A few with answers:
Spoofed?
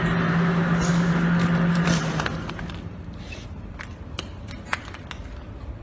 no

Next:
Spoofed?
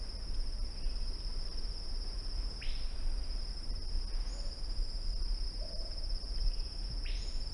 no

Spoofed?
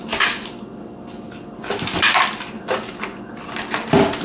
no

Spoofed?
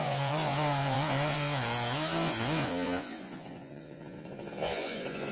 yes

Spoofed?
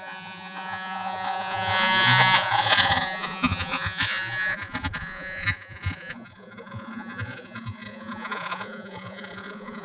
yes